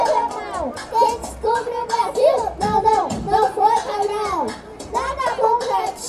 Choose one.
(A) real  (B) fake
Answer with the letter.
A